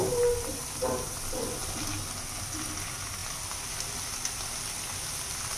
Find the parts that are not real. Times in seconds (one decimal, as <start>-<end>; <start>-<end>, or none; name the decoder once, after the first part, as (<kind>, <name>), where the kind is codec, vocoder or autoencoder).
none